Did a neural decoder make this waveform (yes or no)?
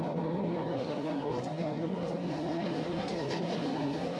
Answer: yes